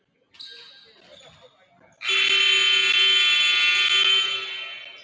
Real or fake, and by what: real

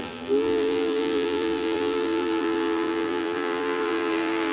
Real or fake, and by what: fake, vocoder, BigVGAN v2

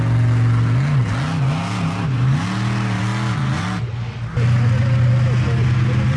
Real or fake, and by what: real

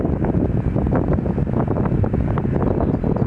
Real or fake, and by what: real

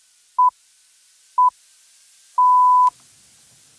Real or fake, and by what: real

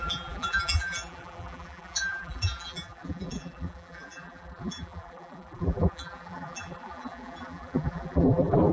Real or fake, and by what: fake, vocoder, BigVGAN v2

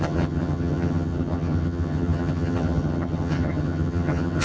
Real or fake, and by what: fake, vocoder, HiFi-GAN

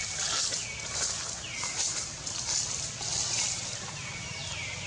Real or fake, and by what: real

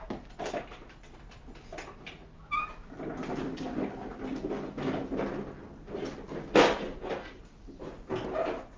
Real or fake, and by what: real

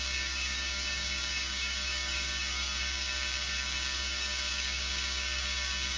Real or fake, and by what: fake, codec, DAC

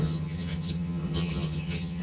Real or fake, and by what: fake, vocoder, HiFi-GAN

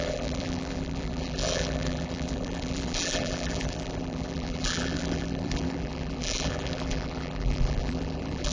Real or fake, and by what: fake, vocoder, BigVGAN v2